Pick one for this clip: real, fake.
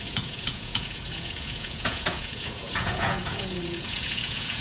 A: fake